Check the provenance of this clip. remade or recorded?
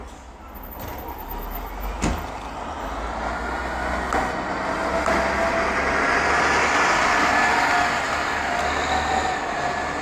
recorded